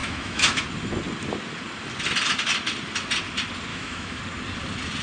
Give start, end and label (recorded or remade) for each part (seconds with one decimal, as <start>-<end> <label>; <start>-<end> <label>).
0.0-0.6 remade; 0.6-3.7 recorded; 3.7-4.2 remade; 4.2-5.0 recorded